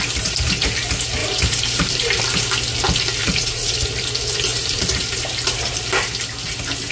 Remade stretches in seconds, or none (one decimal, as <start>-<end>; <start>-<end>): 1.2-2.2; 3.2-3.8; 4.5-5.8

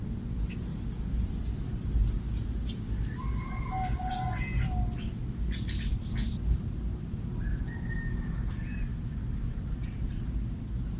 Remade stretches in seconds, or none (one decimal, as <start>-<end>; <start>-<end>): none

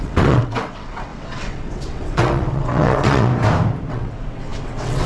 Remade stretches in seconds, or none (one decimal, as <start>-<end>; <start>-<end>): 0.0-3.3; 3.9-5.1

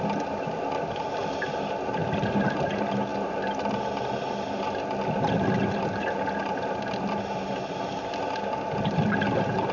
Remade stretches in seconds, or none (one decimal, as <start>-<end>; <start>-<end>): none